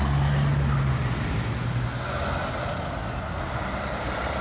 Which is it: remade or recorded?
recorded